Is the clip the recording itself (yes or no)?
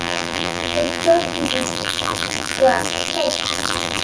no